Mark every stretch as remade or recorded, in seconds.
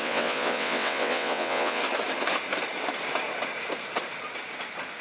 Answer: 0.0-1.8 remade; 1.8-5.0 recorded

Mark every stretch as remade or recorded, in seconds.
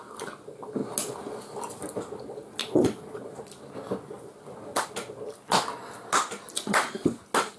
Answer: 0.0-2.6 recorded; 2.6-3.2 remade; 3.2-7.6 recorded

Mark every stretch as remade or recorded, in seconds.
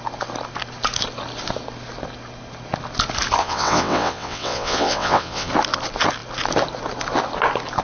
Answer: 0.0-3.4 recorded; 3.4-5.5 remade; 5.5-7.8 recorded